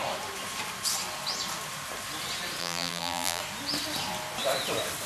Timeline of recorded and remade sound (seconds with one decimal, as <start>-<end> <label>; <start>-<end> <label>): 0.0-2.6 recorded; 2.6-3.4 remade; 3.4-5.1 recorded

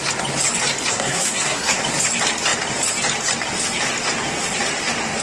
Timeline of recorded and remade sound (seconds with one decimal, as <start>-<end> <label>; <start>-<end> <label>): 0.0-0.9 recorded; 0.9-1.8 remade; 1.8-5.2 recorded